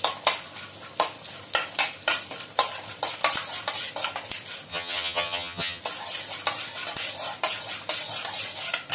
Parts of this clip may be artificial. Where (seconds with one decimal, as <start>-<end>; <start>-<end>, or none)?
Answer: 4.7-5.8